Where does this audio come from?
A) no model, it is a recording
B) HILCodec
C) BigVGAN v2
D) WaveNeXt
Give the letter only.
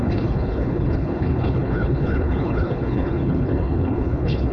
B